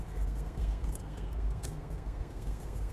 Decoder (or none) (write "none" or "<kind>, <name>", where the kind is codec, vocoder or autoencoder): codec, SNAC